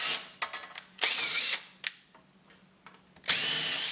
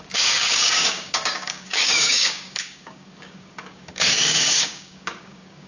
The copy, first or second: second